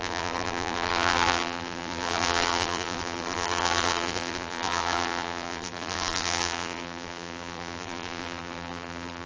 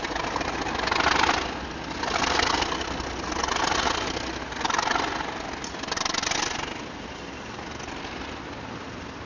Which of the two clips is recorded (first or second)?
second